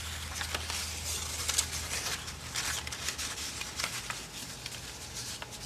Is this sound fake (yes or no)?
no